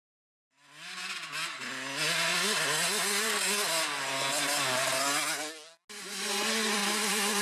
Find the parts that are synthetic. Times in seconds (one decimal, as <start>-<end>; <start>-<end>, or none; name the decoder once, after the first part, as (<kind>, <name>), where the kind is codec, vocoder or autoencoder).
6.8-7.4 (vocoder, BigVGAN v2)

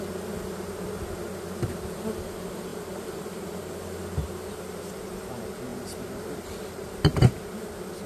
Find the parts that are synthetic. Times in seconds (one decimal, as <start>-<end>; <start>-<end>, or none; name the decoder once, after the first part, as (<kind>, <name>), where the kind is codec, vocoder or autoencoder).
2.7-3.7 (vocoder, BigVGAN v2); 5.7-7.4

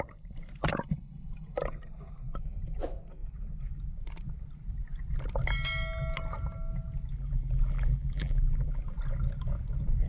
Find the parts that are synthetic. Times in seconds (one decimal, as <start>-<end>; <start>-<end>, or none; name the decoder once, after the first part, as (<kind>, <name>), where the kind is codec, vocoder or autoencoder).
7.1-8.8 (vocoder, BigVGAN v2)

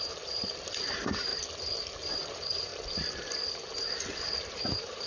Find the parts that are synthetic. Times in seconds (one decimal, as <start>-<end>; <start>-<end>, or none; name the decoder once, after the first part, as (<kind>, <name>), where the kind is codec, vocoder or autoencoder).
0.0-0.4 (vocoder, BigVGAN v2); 0.9-1.3; 2.1-2.7; 4.5-5.1

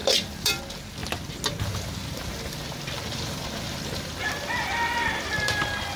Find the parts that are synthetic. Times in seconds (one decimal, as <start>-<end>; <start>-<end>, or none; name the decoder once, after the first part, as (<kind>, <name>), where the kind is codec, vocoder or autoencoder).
0.0-0.6 (vocoder, BigVGAN v2); 2.0-5.6

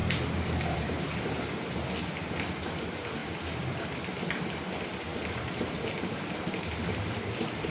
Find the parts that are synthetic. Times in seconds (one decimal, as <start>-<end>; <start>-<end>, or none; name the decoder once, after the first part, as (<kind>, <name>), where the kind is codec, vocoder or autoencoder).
0.0-1.2 (vocoder, BigVGAN v2); 3.2-3.8; 5.1-7.7